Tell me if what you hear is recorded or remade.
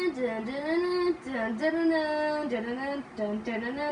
recorded